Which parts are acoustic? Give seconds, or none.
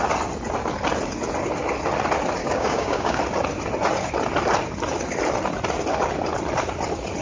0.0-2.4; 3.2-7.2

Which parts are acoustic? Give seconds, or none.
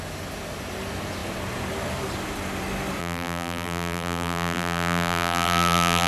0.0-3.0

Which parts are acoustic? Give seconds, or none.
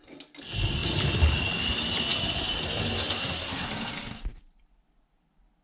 0.0-3.2; 3.7-5.6